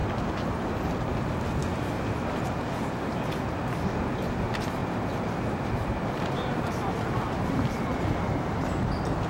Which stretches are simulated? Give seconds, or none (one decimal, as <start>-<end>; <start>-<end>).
none